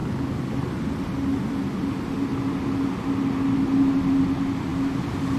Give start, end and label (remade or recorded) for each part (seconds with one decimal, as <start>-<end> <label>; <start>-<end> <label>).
0.0-5.4 recorded